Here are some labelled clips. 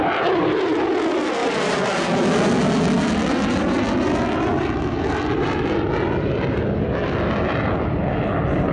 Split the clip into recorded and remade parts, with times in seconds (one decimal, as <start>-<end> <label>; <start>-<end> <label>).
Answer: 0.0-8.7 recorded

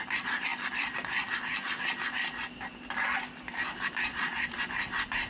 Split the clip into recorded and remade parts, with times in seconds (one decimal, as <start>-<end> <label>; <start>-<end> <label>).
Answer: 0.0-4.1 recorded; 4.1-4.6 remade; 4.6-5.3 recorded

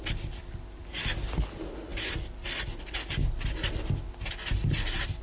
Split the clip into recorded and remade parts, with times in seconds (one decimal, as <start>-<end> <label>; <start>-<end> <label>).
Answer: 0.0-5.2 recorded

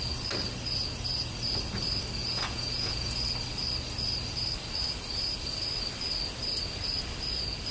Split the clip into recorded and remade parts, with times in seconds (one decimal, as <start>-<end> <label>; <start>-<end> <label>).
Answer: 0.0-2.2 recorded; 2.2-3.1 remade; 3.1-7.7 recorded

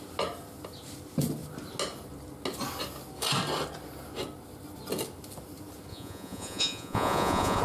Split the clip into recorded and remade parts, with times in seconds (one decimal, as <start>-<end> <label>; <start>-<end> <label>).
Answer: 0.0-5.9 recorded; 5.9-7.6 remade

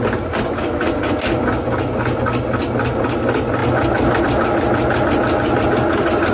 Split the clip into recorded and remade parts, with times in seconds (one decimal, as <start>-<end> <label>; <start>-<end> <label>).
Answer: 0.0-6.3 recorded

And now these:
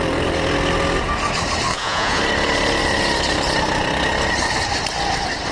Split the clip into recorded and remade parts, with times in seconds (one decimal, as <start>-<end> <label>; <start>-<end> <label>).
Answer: 0.0-1.7 recorded; 1.7-2.2 remade; 2.2-5.5 recorded

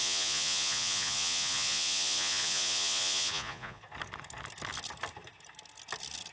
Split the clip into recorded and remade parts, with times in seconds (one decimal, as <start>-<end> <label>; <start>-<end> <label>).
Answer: 0.0-3.8 remade; 3.8-6.3 recorded